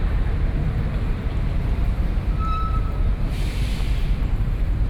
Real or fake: fake